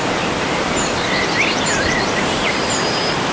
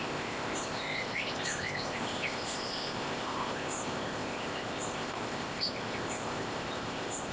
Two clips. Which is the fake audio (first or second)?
second